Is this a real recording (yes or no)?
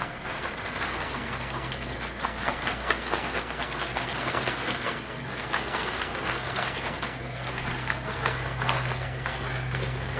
no